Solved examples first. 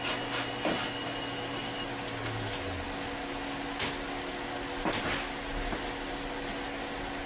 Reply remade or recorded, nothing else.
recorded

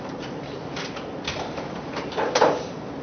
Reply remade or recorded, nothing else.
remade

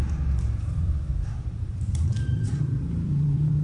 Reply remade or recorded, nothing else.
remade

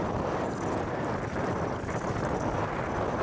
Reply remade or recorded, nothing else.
recorded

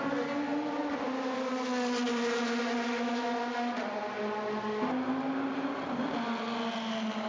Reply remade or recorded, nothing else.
recorded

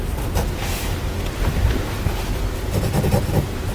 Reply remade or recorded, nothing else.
recorded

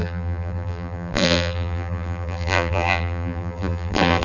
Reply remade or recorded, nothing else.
remade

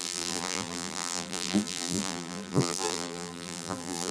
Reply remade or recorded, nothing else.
remade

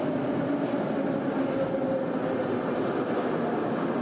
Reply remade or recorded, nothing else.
recorded